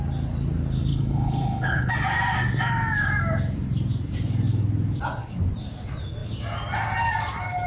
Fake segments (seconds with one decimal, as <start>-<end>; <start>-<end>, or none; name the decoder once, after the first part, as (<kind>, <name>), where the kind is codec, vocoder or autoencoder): 0.9-1.9 (codec, HILCodec)